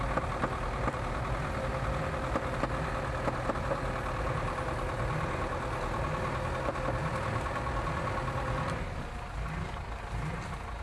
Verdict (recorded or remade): recorded